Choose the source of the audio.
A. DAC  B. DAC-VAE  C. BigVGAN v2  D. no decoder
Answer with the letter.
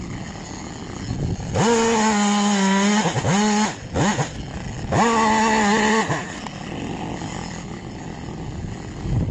D